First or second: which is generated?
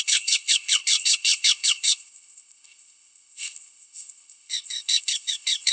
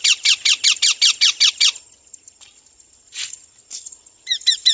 first